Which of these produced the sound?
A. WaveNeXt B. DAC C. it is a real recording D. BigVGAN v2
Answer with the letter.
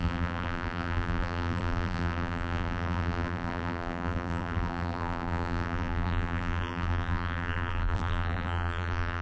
D